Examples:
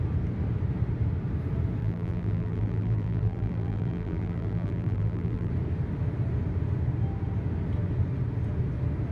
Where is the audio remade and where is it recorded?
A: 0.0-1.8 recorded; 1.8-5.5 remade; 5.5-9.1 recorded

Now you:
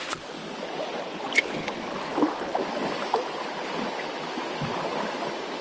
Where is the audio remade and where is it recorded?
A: 0.0-5.6 recorded

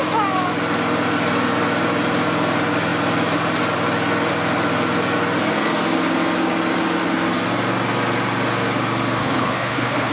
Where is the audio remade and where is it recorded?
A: 0.0-9.2 recorded; 9.2-10.1 remade